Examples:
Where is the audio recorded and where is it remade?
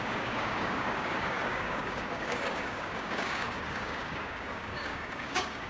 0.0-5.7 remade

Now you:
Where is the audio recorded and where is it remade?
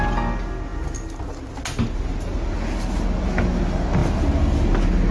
0.0-5.1 recorded